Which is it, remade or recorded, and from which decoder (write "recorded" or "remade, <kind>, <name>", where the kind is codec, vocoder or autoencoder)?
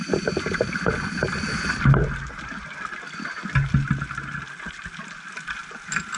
recorded